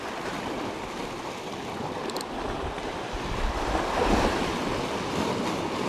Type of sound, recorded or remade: recorded